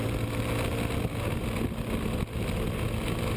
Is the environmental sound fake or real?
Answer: real